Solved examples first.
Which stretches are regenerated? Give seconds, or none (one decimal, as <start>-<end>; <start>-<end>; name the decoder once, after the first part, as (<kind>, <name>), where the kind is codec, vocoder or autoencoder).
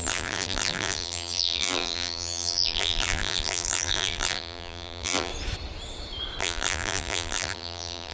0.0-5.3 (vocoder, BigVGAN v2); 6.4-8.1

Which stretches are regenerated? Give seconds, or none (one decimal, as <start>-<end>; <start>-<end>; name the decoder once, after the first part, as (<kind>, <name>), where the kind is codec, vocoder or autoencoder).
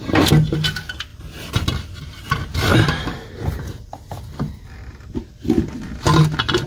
1.1-2.0 (vocoder, BigVGAN v2); 2.7-3.3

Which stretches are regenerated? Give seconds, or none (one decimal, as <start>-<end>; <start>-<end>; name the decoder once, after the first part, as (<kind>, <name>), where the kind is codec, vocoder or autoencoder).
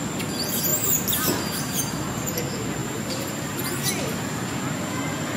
0.7-2.4 (vocoder, BigVGAN v2); 2.8-3.7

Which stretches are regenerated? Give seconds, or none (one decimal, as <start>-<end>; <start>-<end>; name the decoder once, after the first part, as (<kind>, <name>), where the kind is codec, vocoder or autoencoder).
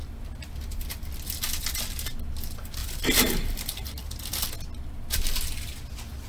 2.8-4.0 (vocoder, BigVGAN v2)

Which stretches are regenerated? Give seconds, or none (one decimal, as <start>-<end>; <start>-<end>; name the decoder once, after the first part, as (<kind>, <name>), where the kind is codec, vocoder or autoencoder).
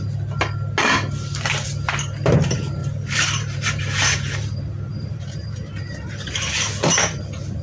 2.8-6.7 (vocoder, BigVGAN v2)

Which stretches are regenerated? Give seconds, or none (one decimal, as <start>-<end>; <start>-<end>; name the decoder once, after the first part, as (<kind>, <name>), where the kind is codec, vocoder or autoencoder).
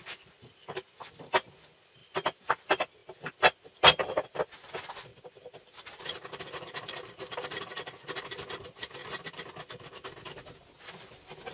2.0-2.6 (vocoder, BigVGAN v2); 5.1-7.6; 9.0-9.5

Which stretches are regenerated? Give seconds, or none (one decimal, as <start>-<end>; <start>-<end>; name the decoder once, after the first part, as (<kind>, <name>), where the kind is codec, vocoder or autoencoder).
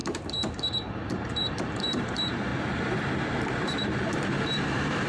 0.0-2.5 (vocoder, BigVGAN v2); 3.3-5.1